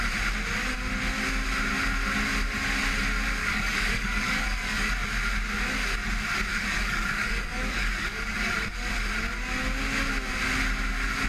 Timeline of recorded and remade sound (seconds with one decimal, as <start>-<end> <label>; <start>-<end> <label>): 0.0-3.4 recorded; 3.4-4.9 remade; 4.9-6.5 recorded; 6.5-8.9 remade; 8.9-11.3 recorded